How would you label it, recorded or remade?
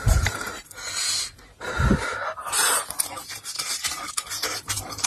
remade